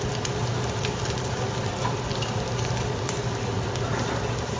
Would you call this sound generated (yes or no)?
no